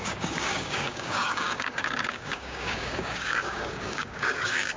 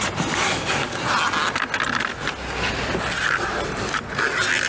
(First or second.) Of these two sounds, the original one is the second